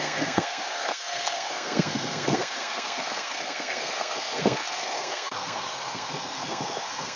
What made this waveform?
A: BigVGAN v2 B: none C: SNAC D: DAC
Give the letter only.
C